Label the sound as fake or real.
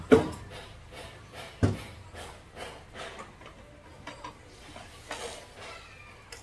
real